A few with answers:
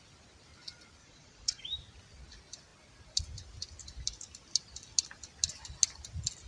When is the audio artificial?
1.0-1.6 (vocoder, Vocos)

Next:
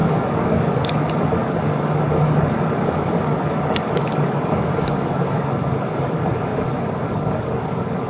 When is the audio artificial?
0.0-8.1 (codec, DAC)

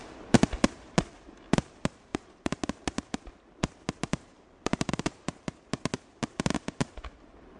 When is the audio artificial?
2.1-2.6 (vocoder, BigVGAN v2); 4.1-5.2

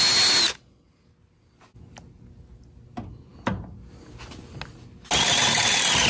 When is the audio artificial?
none